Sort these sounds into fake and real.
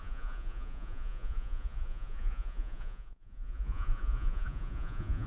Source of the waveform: fake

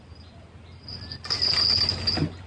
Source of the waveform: real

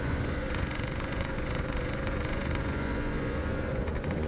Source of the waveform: fake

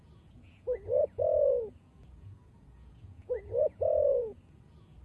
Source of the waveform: fake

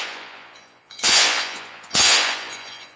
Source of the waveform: fake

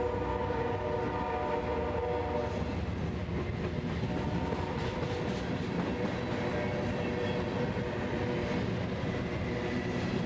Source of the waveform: real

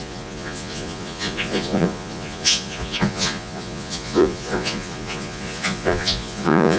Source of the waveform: fake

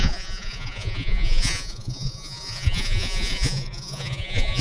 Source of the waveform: fake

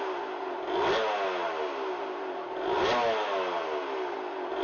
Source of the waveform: real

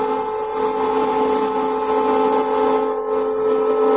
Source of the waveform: real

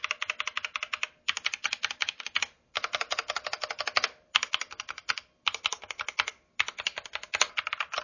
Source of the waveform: real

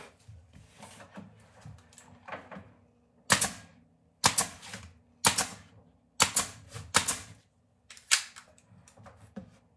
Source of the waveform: real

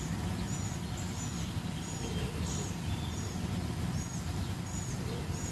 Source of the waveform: real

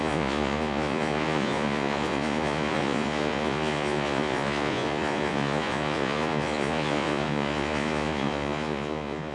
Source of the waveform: fake